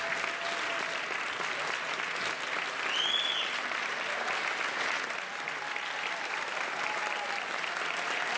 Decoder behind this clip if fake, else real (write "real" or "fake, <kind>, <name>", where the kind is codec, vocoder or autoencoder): real